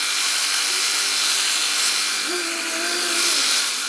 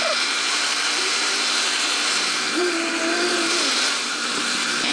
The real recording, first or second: first